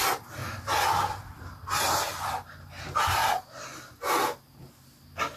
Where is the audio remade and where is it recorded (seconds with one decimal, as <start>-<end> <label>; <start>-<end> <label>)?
0.0-5.4 recorded